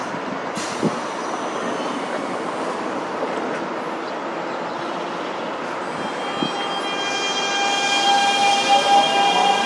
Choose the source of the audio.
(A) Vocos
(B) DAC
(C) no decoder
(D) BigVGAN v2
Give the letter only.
C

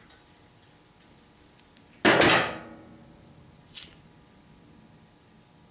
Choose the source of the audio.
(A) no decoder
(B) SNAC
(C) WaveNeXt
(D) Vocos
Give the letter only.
A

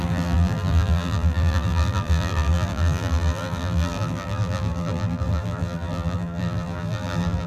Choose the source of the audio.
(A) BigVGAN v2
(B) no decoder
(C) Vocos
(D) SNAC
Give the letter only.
A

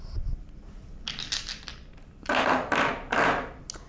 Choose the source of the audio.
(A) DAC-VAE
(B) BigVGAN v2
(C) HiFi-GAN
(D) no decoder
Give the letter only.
D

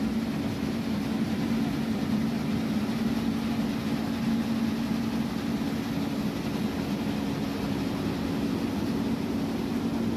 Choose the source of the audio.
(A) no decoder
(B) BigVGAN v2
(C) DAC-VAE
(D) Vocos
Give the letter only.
A